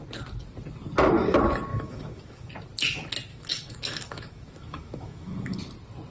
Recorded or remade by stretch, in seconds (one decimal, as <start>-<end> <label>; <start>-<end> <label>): 0.0-1.7 recorded; 1.7-2.5 remade; 2.5-3.3 recorded; 3.3-5.6 remade; 5.6-6.1 recorded